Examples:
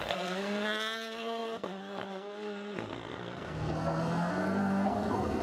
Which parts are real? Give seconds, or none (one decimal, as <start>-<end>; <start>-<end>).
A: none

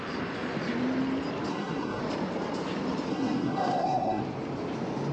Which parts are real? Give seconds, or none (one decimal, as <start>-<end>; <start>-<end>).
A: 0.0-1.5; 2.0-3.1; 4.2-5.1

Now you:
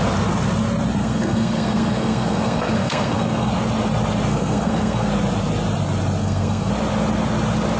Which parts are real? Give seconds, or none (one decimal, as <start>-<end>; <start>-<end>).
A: 0.0-1.0; 3.5-4.3; 5.1-6.2; 6.7-7.8

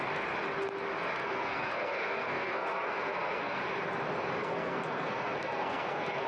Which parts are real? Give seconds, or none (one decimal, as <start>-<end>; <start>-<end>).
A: 0.0-1.2; 3.6-4.4

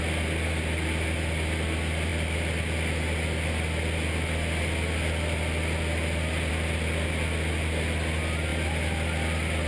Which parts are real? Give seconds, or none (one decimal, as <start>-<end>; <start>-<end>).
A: 0.0-9.7